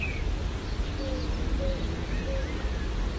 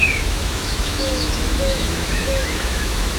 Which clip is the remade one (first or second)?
second